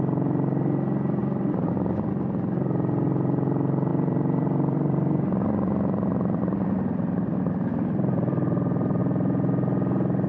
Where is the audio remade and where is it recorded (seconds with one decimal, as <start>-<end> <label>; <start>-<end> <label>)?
0.0-1.2 recorded; 1.2-2.1 remade; 2.1-3.9 recorded; 3.9-9.0 remade; 9.0-10.3 recorded